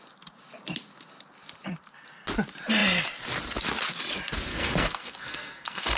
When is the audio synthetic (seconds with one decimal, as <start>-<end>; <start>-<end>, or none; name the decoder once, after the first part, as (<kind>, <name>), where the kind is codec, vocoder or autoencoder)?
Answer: 4.5-6.0 (codec, SNAC)